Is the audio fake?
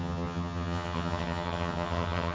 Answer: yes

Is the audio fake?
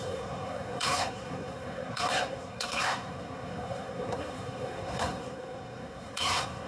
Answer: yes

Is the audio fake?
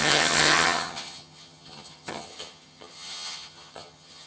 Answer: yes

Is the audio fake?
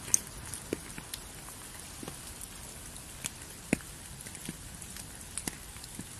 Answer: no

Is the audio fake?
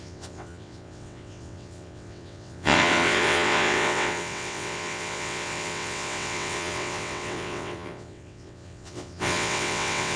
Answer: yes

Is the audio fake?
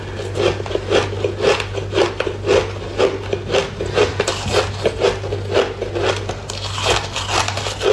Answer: no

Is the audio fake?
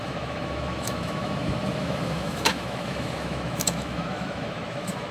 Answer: yes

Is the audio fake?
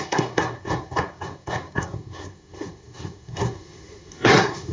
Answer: yes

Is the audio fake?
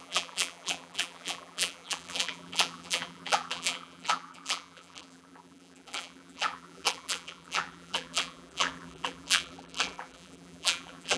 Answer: yes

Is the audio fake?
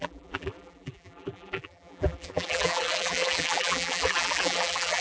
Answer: yes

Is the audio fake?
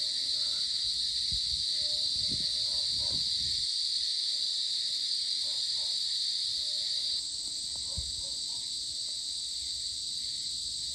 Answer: no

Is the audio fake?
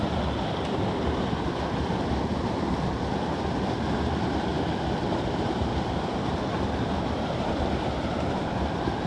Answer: no